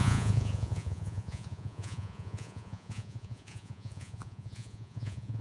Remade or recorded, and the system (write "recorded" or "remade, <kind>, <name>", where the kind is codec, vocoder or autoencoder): remade, vocoder, Vocos